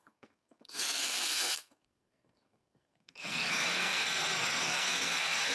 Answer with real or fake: fake